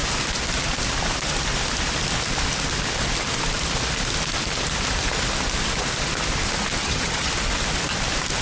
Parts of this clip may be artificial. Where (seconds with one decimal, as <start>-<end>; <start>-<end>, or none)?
6.8-7.3